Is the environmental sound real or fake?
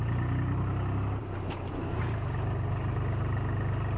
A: real